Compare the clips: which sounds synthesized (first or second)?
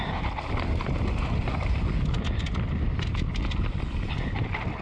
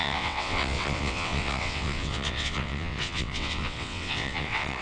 second